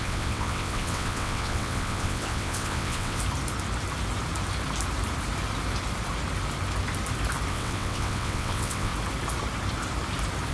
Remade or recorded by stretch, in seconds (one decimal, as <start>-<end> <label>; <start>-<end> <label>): 0.0-3.2 remade; 3.2-7.5 recorded; 7.5-8.9 remade; 8.9-10.5 recorded